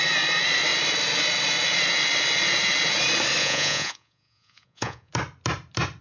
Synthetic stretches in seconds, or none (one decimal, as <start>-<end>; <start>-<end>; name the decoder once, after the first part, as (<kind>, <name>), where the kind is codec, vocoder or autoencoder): 3.4-5.1 (vocoder, Vocos)